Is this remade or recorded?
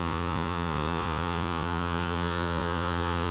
remade